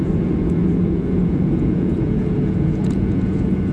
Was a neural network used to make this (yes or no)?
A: yes